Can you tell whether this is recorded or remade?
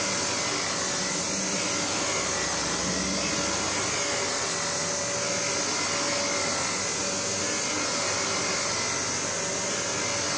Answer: recorded